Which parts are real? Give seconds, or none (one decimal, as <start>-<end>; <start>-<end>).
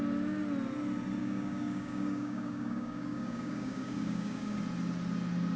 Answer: 0.0-1.2; 4.6-5.6